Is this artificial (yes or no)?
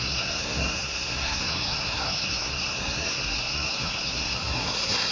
yes